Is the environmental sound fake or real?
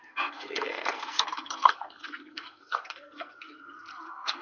fake